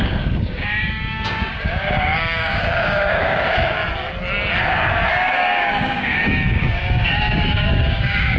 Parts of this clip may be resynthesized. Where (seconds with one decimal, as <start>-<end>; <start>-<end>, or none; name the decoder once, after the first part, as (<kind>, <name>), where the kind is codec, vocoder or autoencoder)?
0.0-3.8 (codec, DAC); 4.6-8.4